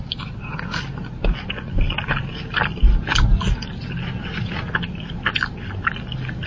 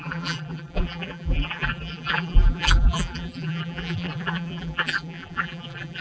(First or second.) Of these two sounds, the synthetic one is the second